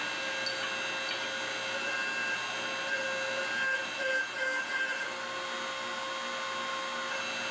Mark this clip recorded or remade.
recorded